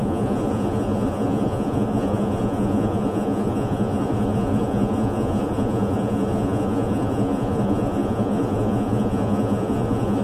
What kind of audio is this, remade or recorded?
remade